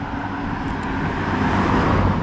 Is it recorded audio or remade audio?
recorded